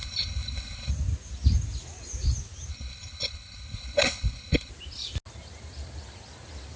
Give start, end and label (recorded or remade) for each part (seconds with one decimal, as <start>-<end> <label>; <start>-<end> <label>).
0.0-0.9 remade; 0.9-2.7 recorded; 2.7-4.7 remade; 4.7-6.8 recorded